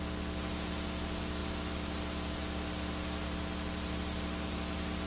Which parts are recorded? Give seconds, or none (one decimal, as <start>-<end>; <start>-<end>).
0.0-1.4; 4.5-5.1